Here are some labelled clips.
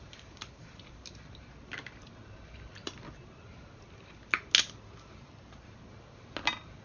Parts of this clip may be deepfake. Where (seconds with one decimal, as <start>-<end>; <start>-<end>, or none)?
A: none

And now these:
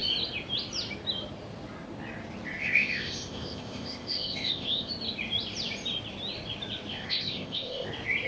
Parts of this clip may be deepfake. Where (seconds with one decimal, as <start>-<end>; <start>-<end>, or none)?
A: 2.6-4.9; 6.9-7.9

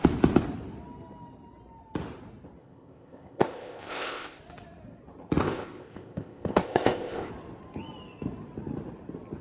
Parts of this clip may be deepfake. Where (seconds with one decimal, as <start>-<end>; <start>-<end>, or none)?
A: 2.6-4.4; 5.4-7.3